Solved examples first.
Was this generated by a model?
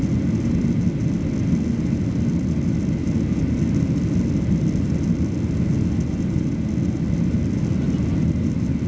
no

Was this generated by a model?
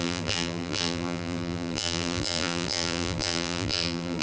yes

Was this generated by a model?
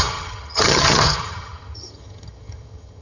yes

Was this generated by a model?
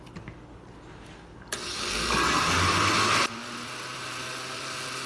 no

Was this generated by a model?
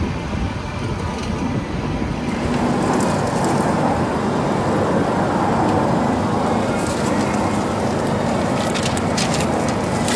no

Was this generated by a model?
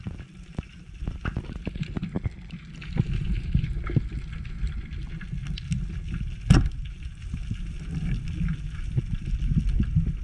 no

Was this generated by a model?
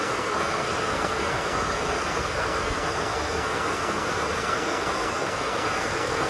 yes